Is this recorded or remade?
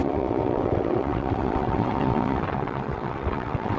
remade